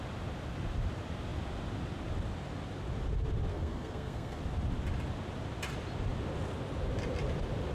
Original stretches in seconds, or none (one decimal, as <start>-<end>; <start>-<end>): 0.0-3.5; 4.4-7.7